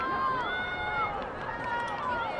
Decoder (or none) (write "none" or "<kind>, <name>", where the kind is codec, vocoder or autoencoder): none